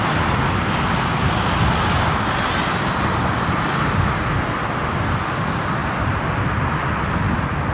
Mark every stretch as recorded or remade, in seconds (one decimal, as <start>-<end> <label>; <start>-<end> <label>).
0.0-7.7 recorded